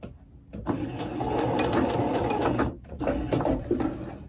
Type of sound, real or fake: real